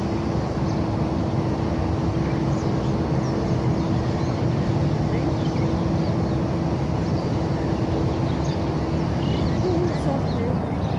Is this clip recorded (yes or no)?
yes